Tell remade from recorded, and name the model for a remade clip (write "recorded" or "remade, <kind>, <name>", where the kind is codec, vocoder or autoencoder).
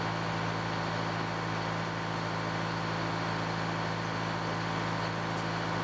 recorded